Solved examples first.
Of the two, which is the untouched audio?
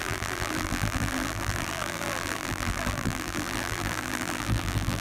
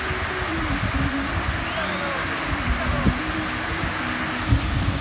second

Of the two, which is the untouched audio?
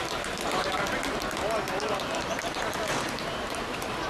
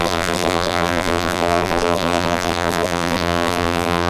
first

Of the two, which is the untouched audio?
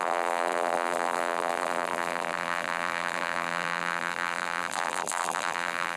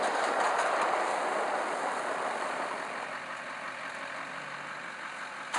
second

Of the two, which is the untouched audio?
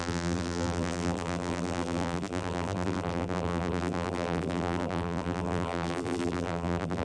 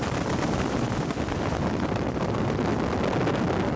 second